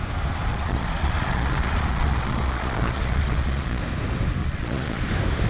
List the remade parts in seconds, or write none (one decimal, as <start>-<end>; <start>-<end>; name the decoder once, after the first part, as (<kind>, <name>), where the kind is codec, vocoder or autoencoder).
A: 0.5-3.8 (vocoder, Vocos); 4.4-5.0

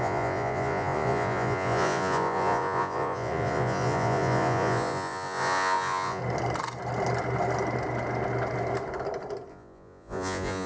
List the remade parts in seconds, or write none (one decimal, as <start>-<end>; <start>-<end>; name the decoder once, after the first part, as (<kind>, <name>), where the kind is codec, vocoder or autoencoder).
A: 0.0-6.2 (vocoder, Vocos); 9.5-10.7